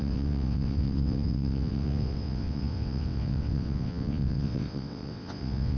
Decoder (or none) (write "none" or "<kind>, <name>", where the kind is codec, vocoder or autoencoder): vocoder, WaveNeXt